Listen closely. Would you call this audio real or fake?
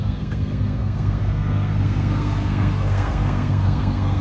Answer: fake